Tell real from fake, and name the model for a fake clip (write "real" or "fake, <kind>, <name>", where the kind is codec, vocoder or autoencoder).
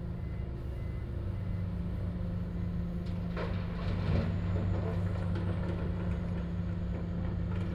real